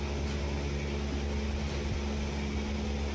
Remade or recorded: recorded